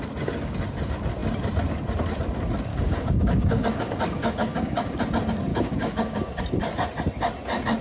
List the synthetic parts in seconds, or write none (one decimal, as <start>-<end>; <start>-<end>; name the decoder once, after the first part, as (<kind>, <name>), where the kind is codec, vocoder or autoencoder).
2.7-5.0 (codec, DAC); 5.5-6.4